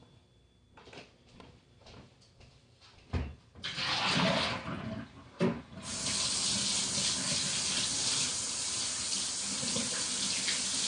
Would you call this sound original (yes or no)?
yes